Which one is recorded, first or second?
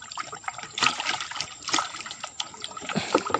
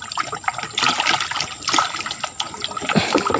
second